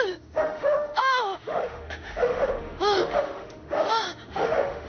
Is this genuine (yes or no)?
no